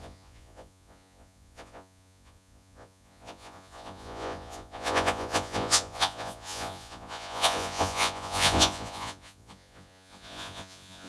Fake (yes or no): yes